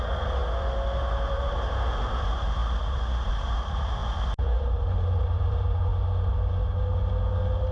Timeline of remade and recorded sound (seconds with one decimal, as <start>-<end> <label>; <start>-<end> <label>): 0.0-0.4 remade; 0.4-1.1 recorded; 1.1-4.0 remade; 4.0-5.2 recorded; 5.2-5.9 remade; 5.9-7.7 recorded